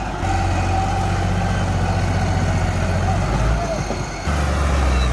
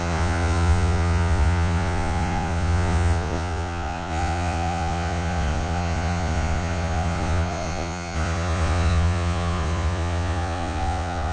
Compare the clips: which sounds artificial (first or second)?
second